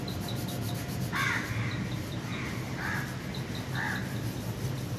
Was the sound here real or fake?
real